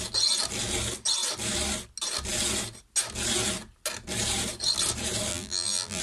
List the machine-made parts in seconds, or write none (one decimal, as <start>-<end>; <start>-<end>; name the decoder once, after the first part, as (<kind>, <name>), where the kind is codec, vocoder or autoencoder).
5.3-6.0 (vocoder, BigVGAN v2)